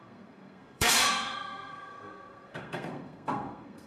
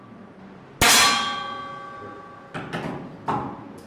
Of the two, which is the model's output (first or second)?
first